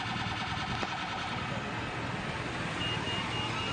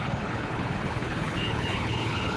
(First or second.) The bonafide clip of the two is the first